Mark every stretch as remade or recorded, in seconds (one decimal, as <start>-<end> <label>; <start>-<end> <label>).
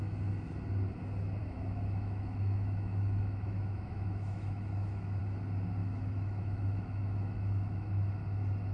0.0-1.4 recorded; 1.4-5.2 remade; 5.2-5.8 recorded; 5.8-8.1 remade; 8.1-8.7 recorded